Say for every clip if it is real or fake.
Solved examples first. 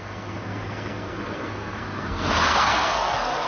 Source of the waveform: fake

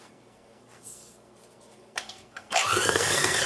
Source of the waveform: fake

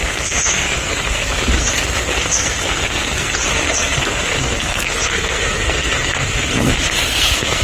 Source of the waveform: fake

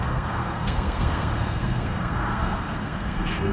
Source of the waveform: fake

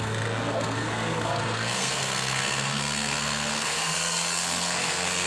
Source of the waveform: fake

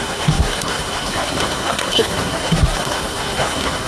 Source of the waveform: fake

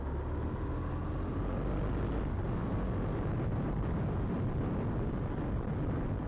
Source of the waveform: real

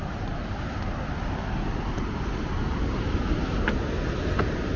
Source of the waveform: real